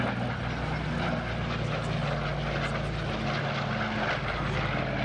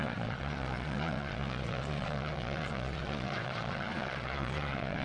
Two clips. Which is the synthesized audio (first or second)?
second